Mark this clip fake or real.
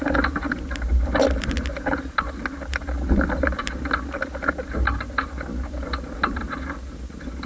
real